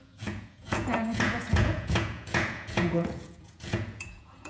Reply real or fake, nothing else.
fake